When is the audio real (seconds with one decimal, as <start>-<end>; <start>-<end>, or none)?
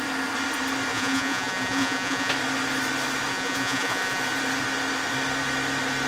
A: 0.0-0.9; 2.3-3.3; 4.2-6.1